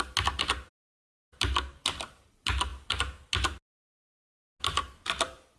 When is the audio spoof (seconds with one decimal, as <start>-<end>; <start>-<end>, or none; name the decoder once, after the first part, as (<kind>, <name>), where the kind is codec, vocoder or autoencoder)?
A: none